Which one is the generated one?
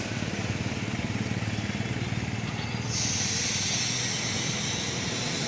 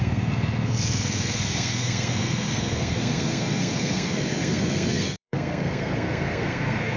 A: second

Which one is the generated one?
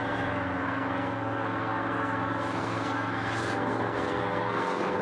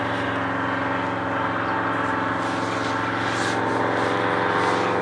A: first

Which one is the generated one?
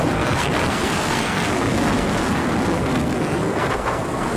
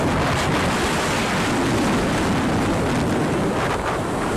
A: first